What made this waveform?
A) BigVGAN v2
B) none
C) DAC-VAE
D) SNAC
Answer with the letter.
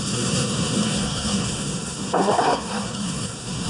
D